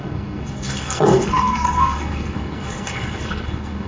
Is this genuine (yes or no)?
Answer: no